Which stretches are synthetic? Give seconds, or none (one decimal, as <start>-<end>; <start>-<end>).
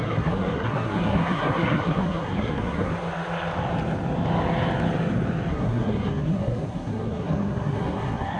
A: 0.0-2.9; 5.5-8.4